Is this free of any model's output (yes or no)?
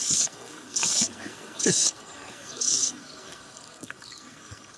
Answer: no